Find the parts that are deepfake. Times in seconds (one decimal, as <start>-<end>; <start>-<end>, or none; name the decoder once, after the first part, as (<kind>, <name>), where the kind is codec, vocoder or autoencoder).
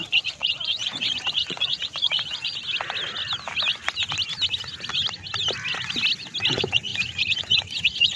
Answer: 0.0-2.6 (vocoder, Vocos); 6.5-8.2